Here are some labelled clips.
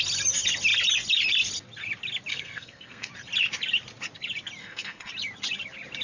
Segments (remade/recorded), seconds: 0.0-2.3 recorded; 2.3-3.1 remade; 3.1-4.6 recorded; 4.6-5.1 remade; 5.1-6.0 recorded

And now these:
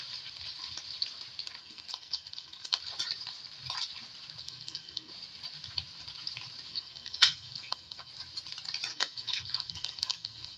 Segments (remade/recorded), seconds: 0.0-1.6 recorded; 1.6-2.8 remade; 2.8-4.4 recorded; 4.4-5.1 remade; 5.1-6.7 recorded; 6.7-8.1 remade; 8.1-8.9 recorded; 8.9-10.6 remade

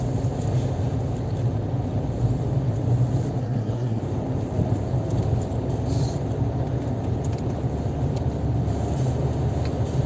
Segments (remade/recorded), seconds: 0.0-3.4 recorded; 3.4-4.0 remade; 4.0-10.1 recorded

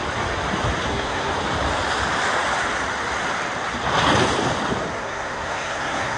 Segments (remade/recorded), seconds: 0.0-0.9 recorded; 0.9-1.3 remade; 1.3-5.0 recorded; 5.0-6.2 remade

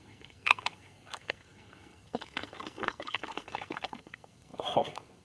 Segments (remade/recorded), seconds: 0.0-5.2 remade

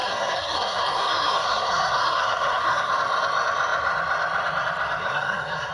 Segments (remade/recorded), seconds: 0.0-2.9 remade; 2.9-5.0 recorded; 5.0-5.7 remade

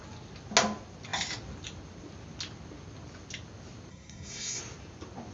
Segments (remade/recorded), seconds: 0.0-3.9 recorded; 3.9-4.6 remade; 4.6-5.3 recorded

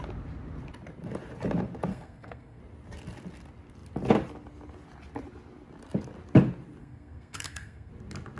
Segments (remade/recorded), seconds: 0.0-1.9 recorded; 1.9-2.6 remade; 2.6-6.8 recorded; 6.8-7.9 remade; 7.9-8.4 recorded